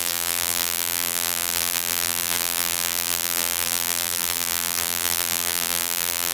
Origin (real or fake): fake